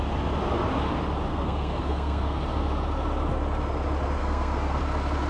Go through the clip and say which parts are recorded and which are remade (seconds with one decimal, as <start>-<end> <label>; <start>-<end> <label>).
0.0-1.3 recorded; 1.3-2.4 remade; 2.4-4.2 recorded; 4.2-4.8 remade; 4.8-5.3 recorded